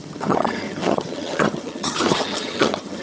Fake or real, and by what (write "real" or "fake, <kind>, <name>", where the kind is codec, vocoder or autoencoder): fake, vocoder, HiFi-GAN